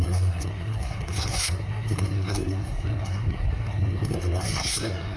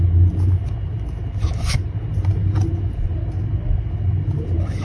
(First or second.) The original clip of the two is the second